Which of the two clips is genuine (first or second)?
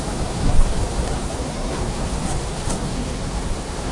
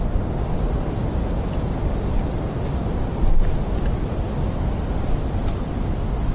second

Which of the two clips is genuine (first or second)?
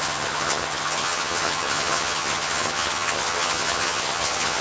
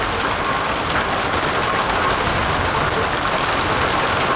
second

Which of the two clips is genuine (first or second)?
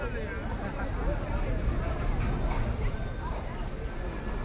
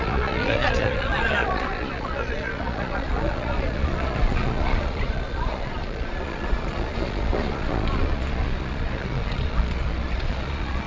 first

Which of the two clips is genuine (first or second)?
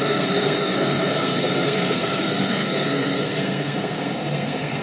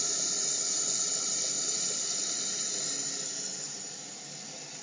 second